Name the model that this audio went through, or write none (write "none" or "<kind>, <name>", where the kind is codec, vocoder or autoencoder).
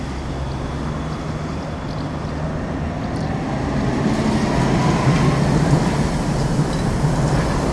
none